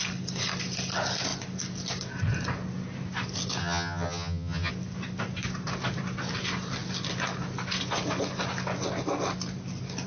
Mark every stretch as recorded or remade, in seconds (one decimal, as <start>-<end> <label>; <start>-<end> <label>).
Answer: 0.0-3.6 recorded; 3.6-4.7 remade; 4.7-10.1 recorded